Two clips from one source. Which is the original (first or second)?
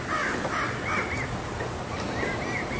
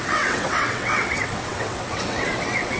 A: first